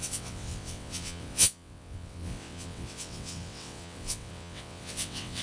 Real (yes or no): no